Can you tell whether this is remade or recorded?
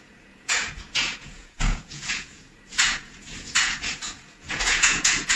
remade